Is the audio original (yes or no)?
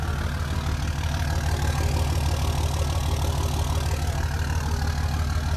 yes